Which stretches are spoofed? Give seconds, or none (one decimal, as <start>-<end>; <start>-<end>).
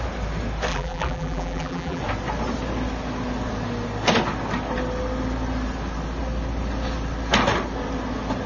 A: 0.7-2.0